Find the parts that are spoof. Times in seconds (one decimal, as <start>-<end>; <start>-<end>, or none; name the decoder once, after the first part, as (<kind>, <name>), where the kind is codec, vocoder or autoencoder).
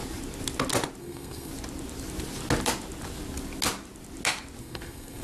1.0-1.5 (codec, SNAC); 4.6-5.2